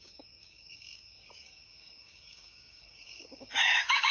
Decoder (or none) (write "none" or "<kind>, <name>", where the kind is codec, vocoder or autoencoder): codec, DAC